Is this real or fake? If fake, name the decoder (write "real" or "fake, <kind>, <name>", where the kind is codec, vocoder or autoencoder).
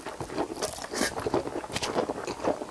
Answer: real